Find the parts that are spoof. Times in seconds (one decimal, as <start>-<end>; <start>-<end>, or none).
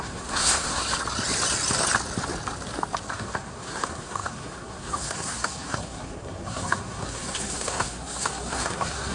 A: 0.0-0.8; 3.1-9.1